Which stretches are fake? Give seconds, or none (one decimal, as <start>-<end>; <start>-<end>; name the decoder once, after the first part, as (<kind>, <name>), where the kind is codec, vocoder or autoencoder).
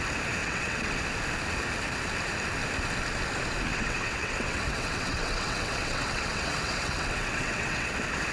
0.4-1.0 (vocoder, WaveNeXt); 3.7-7.9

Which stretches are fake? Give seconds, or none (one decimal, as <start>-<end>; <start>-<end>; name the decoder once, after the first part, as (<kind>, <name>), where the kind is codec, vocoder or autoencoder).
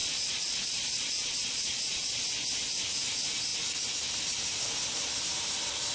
0.0-2.3 (vocoder, Vocos)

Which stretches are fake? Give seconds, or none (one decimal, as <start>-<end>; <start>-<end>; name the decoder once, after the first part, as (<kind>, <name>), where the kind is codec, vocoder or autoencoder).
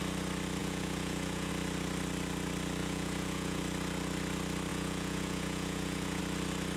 0.6-1.5 (vocoder, Vocos); 2.8-3.6; 4.7-6.2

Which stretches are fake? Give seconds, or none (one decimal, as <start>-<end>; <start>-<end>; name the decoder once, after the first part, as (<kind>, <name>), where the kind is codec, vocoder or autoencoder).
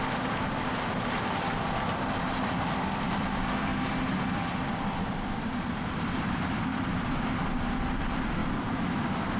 0.0-3.7 (vocoder, BigVGAN v2); 4.3-9.4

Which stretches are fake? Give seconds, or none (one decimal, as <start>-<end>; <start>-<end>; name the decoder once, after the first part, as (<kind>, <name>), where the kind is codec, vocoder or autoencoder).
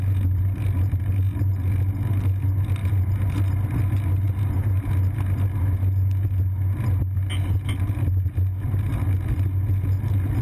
none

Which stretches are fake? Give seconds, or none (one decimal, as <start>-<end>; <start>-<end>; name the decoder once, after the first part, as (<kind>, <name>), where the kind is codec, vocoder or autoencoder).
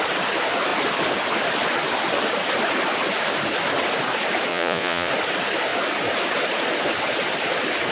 4.5-5.1 (vocoder, Vocos)